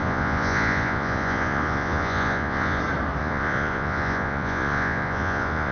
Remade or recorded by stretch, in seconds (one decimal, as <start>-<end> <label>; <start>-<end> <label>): 0.0-2.8 remade; 2.8-3.2 recorded; 3.2-5.7 remade